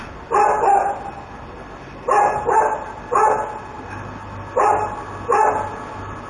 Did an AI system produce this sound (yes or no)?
no